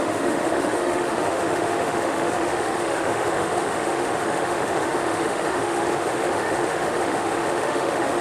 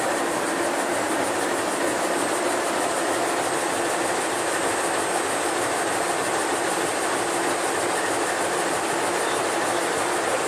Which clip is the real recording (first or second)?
second